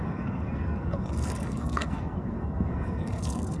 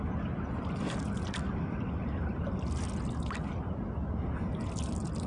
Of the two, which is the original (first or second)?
second